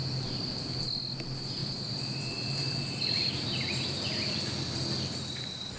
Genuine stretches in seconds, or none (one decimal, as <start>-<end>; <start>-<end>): 0.8-1.6; 3.4-5.8